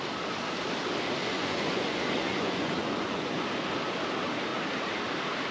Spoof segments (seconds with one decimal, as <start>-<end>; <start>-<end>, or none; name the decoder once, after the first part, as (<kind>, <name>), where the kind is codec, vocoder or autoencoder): 1.2-3.4 (vocoder, Vocos)